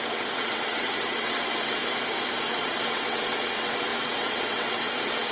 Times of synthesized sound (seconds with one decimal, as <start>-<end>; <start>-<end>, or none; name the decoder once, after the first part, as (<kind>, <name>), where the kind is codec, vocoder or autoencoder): 0.0-1.8 (vocoder, WaveNeXt); 2.4-5.3